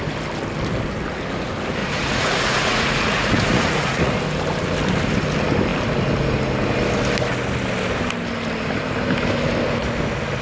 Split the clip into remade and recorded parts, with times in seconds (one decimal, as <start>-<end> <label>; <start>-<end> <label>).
0.0-1.8 recorded; 1.8-4.1 remade; 4.1-10.4 recorded

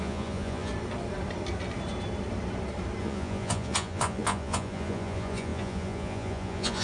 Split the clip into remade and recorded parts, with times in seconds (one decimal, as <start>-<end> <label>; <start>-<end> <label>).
0.0-0.7 remade; 0.7-3.0 recorded; 3.0-6.8 remade

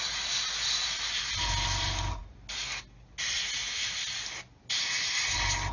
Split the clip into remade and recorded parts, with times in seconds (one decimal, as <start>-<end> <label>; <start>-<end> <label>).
0.0-5.7 recorded

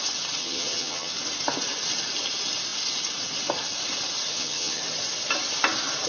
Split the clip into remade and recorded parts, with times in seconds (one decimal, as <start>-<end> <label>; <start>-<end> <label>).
0.0-0.4 recorded; 0.4-1.1 remade; 1.1-4.3 recorded; 4.3-4.8 remade; 4.8-6.1 recorded